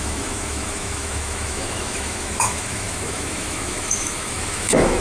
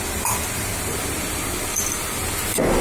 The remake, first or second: first